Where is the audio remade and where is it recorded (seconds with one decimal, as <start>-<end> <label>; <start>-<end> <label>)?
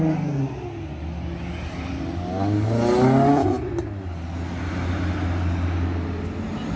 0.0-6.8 recorded